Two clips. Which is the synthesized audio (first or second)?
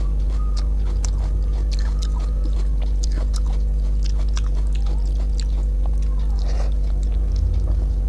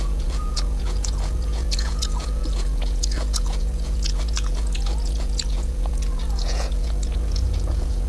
second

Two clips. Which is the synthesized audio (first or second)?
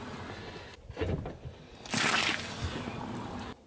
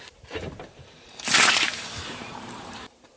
second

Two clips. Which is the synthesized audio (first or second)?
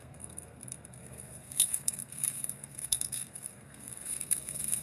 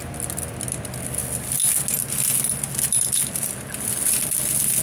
first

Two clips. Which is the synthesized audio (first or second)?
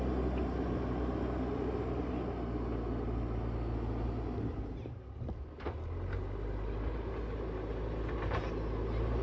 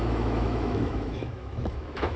second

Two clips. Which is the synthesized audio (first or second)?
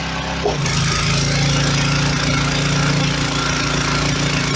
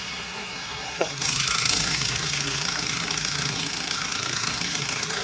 second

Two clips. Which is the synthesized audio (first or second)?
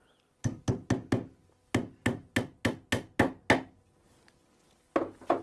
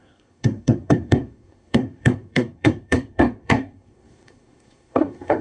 second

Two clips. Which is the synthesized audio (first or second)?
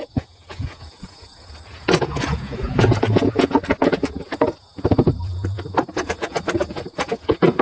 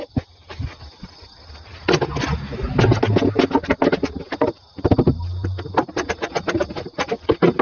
first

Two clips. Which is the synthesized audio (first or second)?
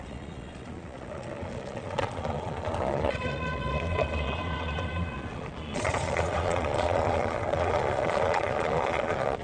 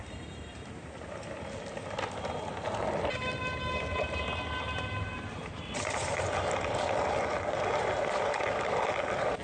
first